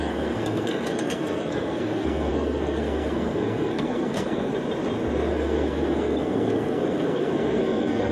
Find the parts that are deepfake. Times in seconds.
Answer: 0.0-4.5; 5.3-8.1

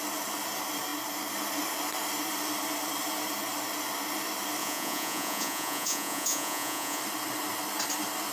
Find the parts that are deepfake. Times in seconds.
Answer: 4.6-7.0

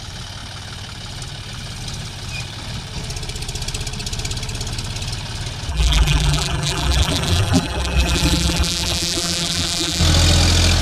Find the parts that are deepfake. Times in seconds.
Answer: 5.7-10.0

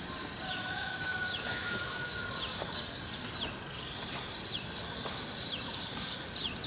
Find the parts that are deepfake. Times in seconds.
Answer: 0.5-2.2

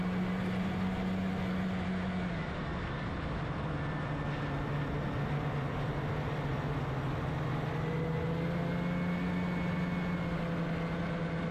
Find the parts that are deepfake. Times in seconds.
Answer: none

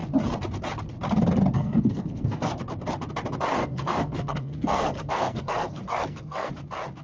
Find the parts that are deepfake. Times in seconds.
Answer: 1.5-2.5; 3.6-6.5

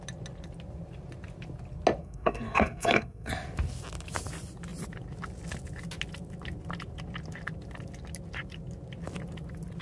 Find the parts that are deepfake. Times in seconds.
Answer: 2.0-3.3

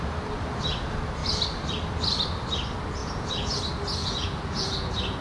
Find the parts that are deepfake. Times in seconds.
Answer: 3.0-3.6; 4.0-5.2